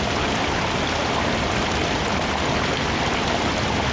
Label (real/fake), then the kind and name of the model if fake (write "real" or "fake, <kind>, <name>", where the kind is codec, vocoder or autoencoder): real